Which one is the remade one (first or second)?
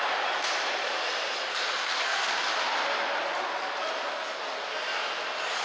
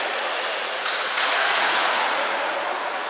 second